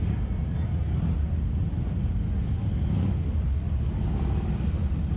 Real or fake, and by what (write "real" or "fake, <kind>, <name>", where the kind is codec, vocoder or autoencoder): real